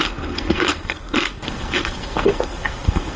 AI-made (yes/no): yes